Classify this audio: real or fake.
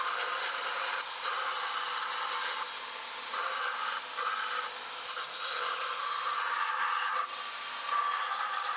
real